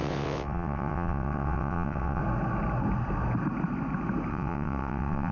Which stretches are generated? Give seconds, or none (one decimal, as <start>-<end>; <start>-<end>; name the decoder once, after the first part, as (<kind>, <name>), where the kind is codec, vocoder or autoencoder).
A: 0.0-2.2 (vocoder, WaveNeXt); 4.3-5.3